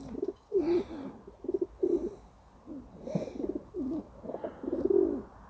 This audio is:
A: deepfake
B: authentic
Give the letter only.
B